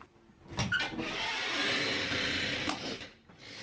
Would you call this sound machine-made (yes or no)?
no